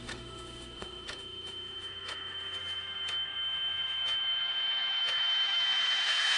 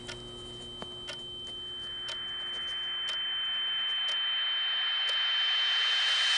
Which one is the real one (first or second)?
second